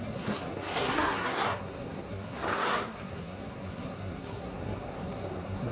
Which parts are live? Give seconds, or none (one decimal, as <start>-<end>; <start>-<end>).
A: none